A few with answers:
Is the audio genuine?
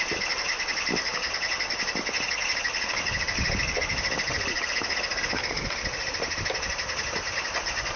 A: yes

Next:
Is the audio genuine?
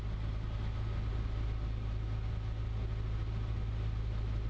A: yes